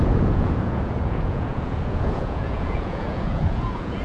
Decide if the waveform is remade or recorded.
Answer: remade